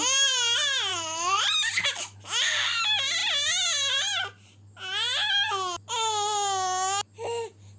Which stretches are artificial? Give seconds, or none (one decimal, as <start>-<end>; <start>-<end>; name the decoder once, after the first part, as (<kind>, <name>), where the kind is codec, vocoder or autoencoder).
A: 0.9-1.4 (codec, DAC)